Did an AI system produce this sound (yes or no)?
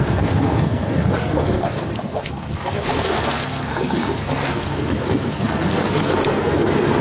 yes